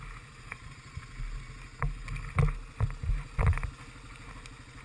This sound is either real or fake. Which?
real